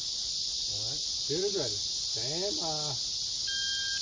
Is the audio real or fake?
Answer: real